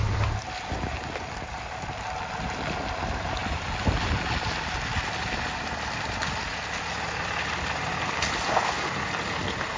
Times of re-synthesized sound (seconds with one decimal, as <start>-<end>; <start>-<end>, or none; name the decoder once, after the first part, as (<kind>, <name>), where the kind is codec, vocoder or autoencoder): none